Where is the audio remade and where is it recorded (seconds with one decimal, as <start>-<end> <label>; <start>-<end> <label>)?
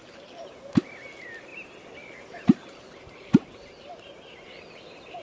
0.0-0.8 remade; 0.8-1.5 recorded; 1.5-4.6 remade; 4.6-5.2 recorded